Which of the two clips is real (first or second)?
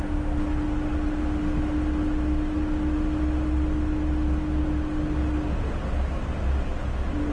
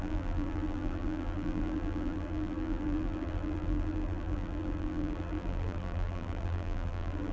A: first